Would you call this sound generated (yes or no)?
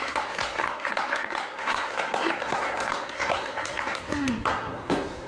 yes